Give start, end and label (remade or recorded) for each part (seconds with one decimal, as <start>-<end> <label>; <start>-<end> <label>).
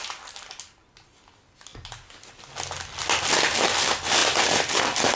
0.0-5.2 recorded